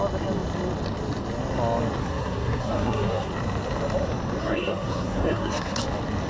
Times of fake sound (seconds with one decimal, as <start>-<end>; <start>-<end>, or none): 2.0-3.3; 4.4-5.8